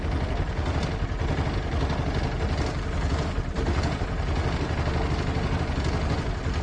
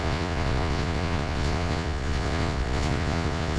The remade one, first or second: second